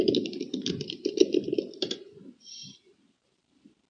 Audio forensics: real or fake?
fake